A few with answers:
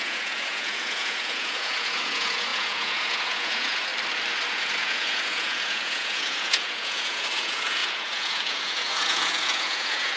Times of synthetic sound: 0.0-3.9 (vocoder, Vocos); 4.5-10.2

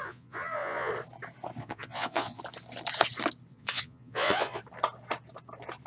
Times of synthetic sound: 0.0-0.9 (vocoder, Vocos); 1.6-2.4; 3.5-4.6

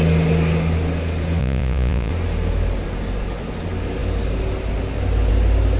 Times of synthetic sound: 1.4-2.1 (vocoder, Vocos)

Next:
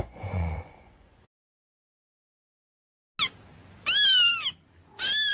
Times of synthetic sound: 0.0-2.2 (vocoder, Vocos)

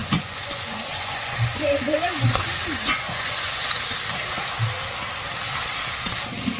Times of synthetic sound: 0.0-3.7 (vocoder, Vocos)

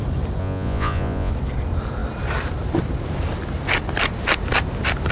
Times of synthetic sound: 0.4-1.3 (vocoder, Vocos)